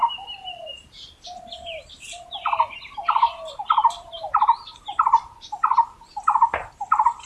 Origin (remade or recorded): recorded